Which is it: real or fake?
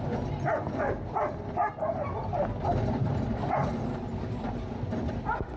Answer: real